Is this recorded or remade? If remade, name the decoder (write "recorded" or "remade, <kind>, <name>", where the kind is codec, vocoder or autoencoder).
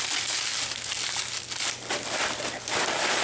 recorded